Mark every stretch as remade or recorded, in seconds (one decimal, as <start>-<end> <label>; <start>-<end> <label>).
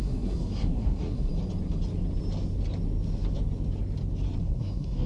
0.0-1.3 remade; 1.3-4.4 recorded; 4.4-5.1 remade